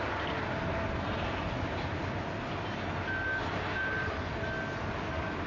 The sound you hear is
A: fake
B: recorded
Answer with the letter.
B